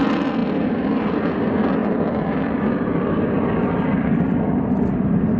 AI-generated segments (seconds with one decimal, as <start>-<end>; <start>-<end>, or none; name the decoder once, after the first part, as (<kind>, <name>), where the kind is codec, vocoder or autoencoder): none

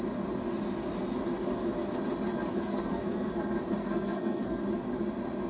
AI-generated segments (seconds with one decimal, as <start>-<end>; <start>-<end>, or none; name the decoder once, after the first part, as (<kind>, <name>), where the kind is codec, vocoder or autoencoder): 2.5-3.3 (codec, SNAC); 3.8-4.6

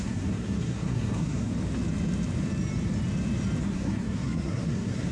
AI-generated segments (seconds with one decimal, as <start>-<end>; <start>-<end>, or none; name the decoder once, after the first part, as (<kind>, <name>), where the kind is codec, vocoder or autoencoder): 0.0-1.5 (codec, SNAC); 3.6-5.1

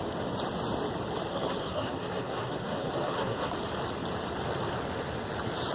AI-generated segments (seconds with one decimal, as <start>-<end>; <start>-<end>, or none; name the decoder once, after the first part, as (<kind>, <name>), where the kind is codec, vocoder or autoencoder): 1.3-3.5 (codec, SNAC)

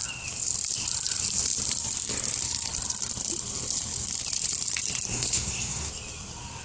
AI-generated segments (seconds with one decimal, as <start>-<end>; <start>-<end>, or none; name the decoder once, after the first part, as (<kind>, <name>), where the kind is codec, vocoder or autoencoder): 5.1-5.9 (codec, SNAC)

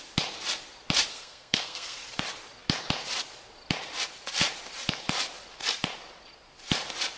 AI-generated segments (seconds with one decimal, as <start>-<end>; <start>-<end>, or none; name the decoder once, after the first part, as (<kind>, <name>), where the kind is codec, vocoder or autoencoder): 1.1-2.0 (codec, SNAC)